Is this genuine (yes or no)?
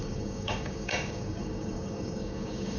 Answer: no